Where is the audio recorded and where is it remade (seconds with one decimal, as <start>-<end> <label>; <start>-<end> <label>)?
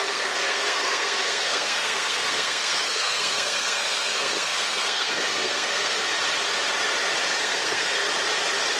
0.0-6.1 remade; 6.1-7.4 recorded; 7.4-8.0 remade; 8.0-8.8 recorded